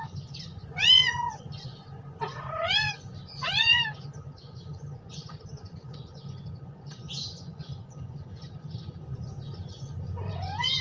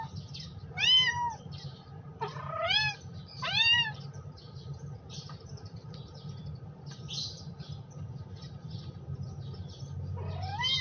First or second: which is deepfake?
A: first